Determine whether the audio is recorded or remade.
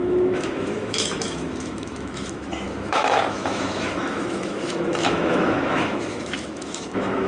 remade